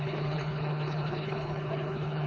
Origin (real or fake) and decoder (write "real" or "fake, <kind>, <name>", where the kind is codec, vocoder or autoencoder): fake, codec, HILCodec